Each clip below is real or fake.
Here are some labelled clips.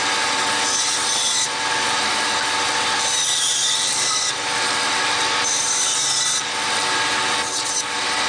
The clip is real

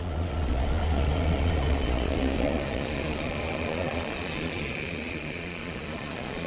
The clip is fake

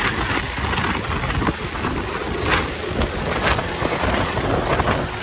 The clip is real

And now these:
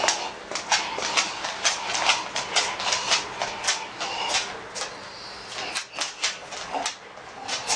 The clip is real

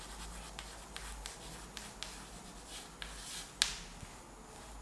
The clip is real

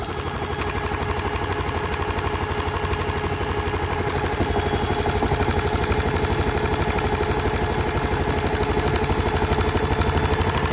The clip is real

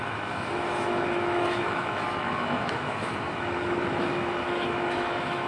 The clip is fake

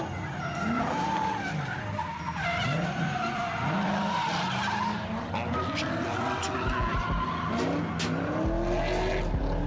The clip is real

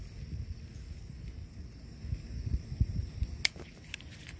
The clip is real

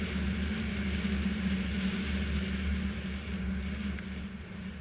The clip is real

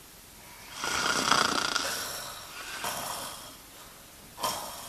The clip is real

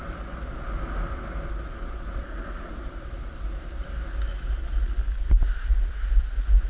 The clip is real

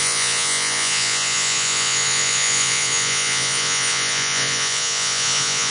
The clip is fake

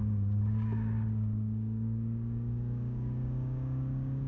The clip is fake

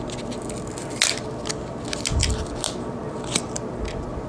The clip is real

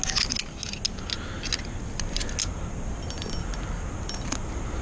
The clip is real